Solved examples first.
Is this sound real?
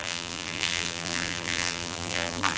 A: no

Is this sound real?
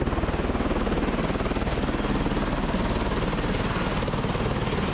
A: yes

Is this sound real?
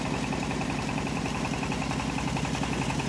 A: yes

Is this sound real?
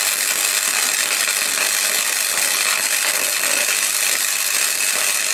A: yes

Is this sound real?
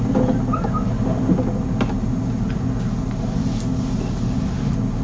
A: yes